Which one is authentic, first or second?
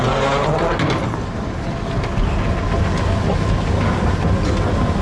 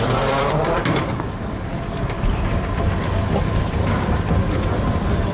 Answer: first